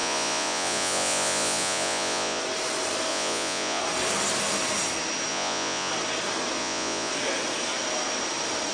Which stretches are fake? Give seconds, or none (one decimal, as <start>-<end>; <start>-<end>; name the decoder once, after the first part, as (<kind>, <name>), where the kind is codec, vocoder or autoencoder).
0.0-2.4 (vocoder, Vocos); 3.1-3.8; 5.3-5.9; 6.6-7.1